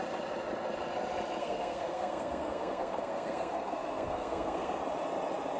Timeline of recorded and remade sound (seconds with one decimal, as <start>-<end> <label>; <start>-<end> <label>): 0.0-1.4 recorded; 1.4-4.8 remade; 4.8-5.6 recorded